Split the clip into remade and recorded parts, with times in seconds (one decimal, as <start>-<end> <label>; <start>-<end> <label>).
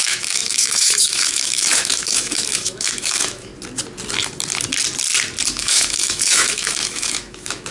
0.0-3.5 remade; 3.5-5.5 recorded; 5.5-7.7 remade